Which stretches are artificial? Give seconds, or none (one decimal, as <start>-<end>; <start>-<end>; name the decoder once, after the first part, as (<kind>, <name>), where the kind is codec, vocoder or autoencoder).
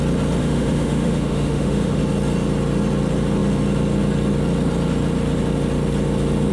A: 0.4-2.0 (autoencoder, DAC-VAE)